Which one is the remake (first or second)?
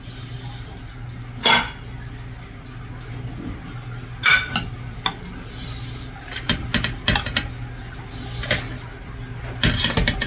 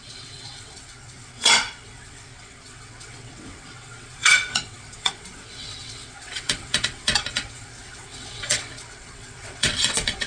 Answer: second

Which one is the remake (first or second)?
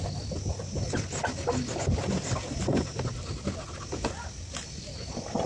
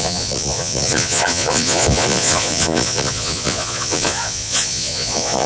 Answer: second